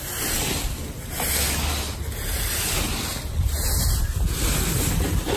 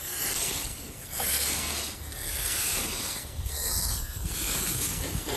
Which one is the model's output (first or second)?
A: second